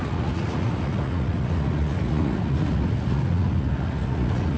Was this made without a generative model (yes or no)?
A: no